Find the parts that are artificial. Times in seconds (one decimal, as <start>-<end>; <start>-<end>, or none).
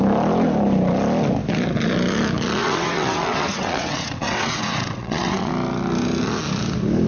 2.6-5.5